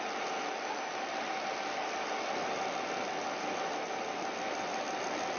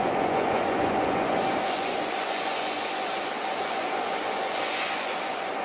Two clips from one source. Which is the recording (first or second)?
first